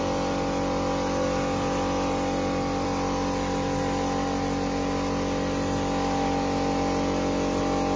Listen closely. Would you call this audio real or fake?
real